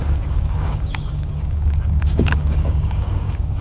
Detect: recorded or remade remade